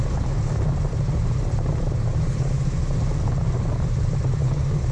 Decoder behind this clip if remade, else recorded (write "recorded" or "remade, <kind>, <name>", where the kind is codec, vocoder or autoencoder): remade, vocoder, BigVGAN v2